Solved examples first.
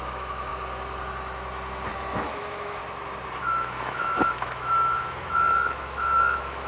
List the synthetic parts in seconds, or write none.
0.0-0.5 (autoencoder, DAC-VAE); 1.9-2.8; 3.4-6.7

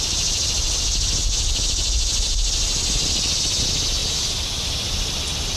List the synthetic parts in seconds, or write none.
none

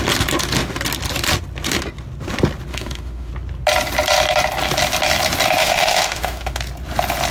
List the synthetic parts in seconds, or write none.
2.7-3.3 (autoencoder, DAC-VAE); 5.6-6.6